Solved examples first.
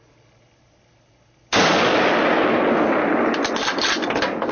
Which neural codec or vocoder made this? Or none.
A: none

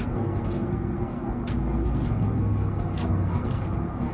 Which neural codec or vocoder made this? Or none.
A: codec, SNAC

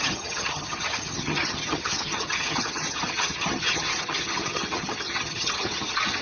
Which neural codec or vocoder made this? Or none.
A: vocoder, HiFi-GAN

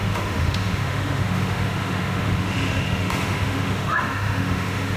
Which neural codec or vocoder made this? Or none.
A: autoencoder, DAC-VAE